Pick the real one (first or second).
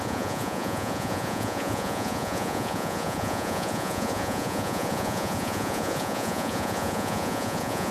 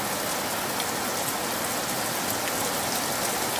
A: second